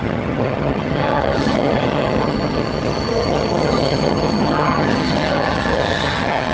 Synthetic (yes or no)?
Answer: yes